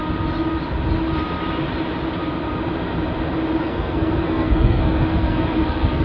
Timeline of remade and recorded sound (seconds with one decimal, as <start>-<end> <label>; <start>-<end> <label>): 0.0-3.6 recorded; 3.6-6.0 remade